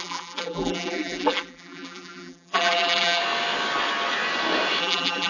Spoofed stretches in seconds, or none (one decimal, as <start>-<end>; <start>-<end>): 0.0-3.2; 4.8-5.3